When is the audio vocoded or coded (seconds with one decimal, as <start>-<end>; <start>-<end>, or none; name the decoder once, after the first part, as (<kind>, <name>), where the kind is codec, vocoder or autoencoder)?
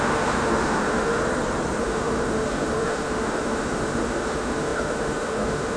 0.0-1.2 (autoencoder, DAC-VAE); 1.8-5.8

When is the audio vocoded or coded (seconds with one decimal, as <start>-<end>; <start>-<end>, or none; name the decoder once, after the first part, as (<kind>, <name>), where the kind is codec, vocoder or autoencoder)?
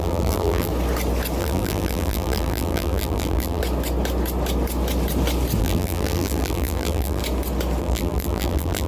0.0-0.7 (vocoder, BigVGAN v2); 1.4-3.6; 5.6-7.2; 7.8-8.9